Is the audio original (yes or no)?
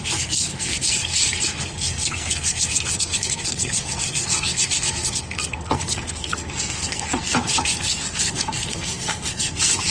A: no